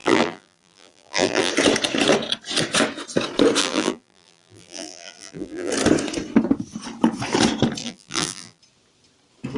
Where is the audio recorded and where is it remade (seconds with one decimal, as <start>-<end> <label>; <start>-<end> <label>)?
0.0-1.5 remade; 1.5-3.6 recorded; 3.6-5.7 remade; 5.7-7.8 recorded; 7.8-8.6 remade; 8.6-9.6 recorded